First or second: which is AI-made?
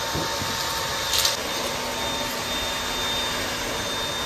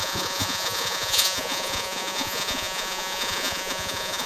second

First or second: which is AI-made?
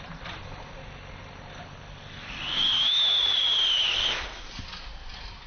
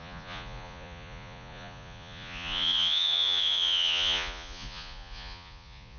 second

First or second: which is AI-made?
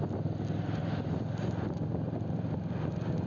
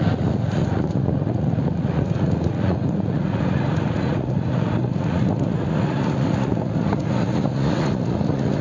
second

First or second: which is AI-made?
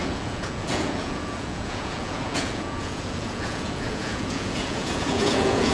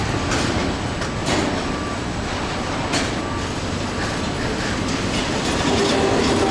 first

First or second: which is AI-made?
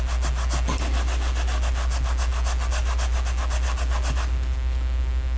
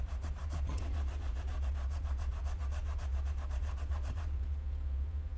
second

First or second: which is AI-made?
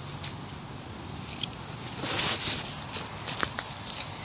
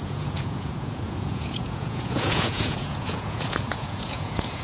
second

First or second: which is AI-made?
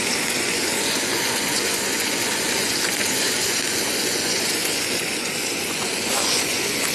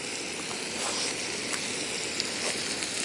first